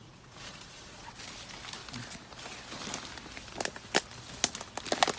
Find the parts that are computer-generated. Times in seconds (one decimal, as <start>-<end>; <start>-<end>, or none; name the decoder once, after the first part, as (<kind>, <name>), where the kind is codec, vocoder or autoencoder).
0.0-1.1 (vocoder, Vocos)